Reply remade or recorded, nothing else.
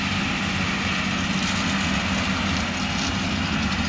recorded